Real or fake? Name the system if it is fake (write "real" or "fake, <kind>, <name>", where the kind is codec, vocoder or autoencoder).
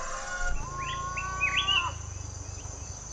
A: real